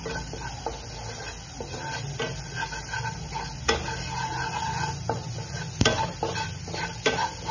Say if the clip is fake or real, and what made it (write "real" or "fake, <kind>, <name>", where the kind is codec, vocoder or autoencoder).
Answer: real